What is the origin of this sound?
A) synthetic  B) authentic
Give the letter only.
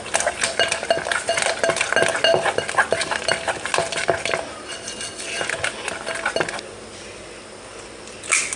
B